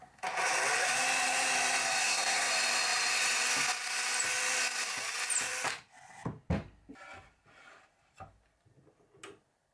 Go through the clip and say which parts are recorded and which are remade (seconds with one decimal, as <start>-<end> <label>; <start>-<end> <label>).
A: 0.0-2.0 recorded; 2.0-2.5 remade; 2.5-9.7 recorded